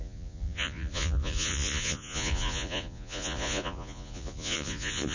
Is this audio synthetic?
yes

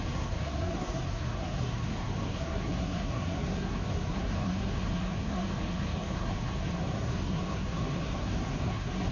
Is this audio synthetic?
yes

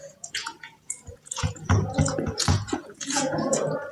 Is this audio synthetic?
yes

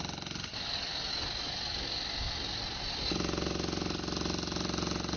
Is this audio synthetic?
no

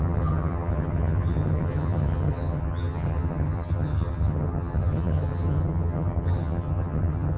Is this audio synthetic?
yes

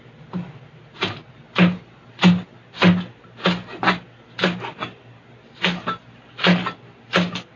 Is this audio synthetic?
no